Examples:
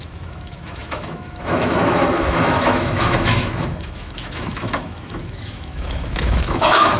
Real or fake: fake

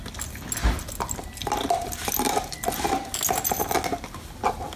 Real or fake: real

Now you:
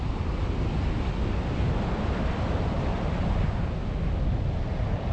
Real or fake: real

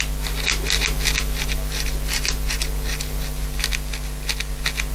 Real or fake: real